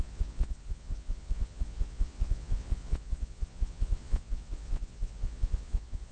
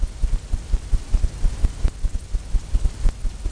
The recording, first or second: second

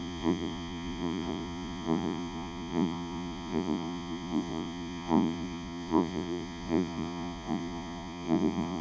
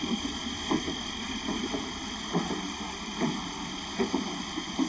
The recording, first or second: second